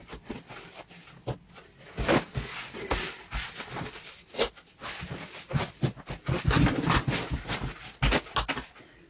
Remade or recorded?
recorded